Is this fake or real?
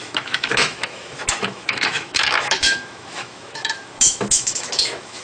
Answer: fake